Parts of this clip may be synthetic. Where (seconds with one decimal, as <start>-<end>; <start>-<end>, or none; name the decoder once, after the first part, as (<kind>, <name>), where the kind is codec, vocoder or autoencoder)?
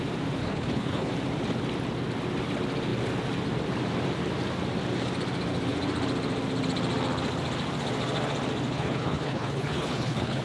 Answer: 0.4-1.1 (codec, HILCodec); 8.7-10.4